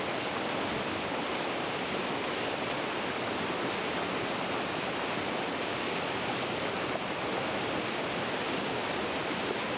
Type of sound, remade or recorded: recorded